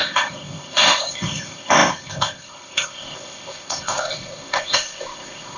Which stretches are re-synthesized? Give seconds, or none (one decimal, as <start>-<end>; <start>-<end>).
0.0-5.6